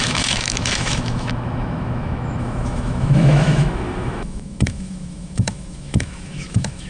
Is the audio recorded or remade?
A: remade